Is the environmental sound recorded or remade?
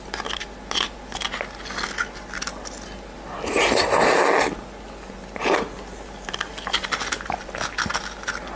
recorded